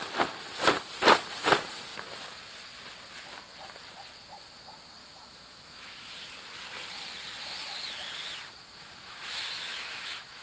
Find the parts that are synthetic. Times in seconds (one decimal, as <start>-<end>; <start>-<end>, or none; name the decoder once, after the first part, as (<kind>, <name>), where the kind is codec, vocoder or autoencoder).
5.0-6.2 (autoencoder, DAC-VAE); 8.6-10.4